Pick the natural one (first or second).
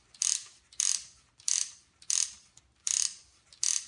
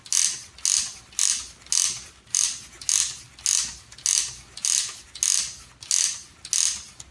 second